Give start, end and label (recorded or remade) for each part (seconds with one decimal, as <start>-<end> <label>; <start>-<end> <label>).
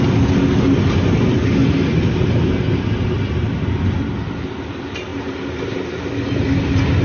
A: 0.0-7.0 recorded